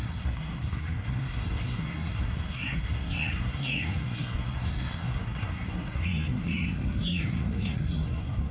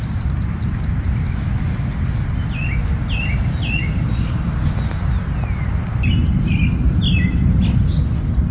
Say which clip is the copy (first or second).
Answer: first